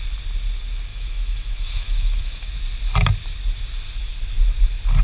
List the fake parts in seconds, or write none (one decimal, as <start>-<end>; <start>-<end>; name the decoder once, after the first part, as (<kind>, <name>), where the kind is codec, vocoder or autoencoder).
0.9-2.5 (autoencoder, DAC-VAE)

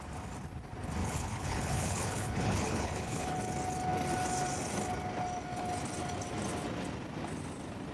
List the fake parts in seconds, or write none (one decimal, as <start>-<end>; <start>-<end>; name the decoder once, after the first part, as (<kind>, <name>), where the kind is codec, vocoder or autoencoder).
1.0-3.4 (codec, HILCodec)

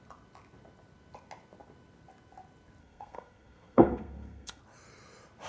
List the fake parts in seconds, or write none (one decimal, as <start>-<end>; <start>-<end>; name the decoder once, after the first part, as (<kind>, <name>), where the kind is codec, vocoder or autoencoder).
2.8-4.6 (codec, SNAC)